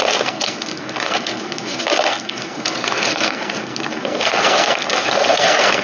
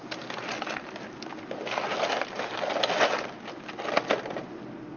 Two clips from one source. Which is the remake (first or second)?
first